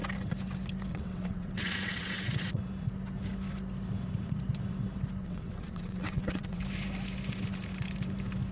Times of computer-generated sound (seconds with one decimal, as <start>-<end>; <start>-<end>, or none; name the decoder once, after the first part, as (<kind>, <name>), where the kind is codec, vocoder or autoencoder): 0.9-2.6 (vocoder, WaveNeXt); 5.2-6.6